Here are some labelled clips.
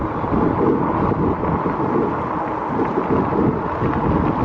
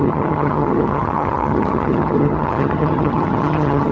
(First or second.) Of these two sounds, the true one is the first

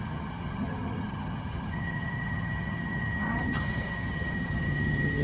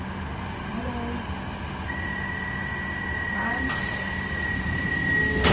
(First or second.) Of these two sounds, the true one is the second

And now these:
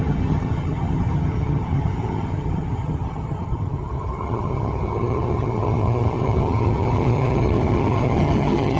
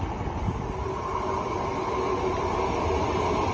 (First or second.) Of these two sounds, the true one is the second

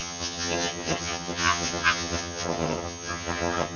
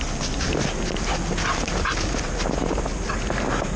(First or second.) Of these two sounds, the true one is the second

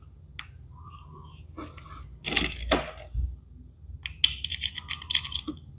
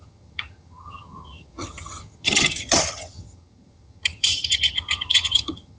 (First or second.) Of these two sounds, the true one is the first